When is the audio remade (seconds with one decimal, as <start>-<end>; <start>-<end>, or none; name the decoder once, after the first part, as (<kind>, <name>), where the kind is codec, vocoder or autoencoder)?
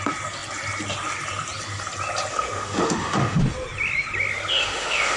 2.3-3.4 (autoencoder, DAC-VAE); 4.5-5.2